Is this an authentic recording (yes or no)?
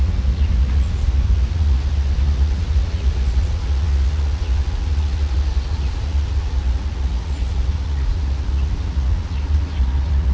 no